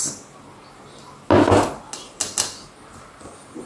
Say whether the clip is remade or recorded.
recorded